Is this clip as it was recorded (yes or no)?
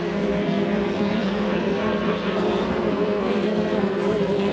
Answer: no